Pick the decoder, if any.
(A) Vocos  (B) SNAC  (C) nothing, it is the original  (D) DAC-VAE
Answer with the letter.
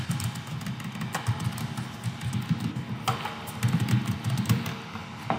C